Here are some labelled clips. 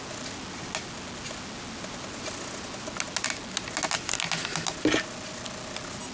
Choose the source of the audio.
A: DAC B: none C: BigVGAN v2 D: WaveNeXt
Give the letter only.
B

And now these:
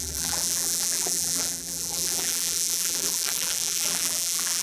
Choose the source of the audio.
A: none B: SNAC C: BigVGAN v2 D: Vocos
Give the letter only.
C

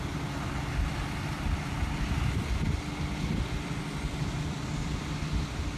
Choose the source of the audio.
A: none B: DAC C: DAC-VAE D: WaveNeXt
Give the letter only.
A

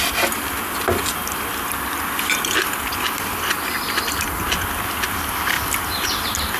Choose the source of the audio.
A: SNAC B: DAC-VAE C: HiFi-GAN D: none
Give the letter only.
D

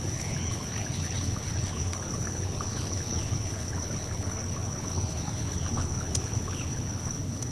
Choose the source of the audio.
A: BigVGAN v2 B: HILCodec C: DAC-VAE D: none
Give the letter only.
B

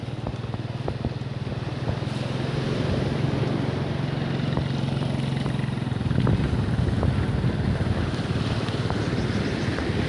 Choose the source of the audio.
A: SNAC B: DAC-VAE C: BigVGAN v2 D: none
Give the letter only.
D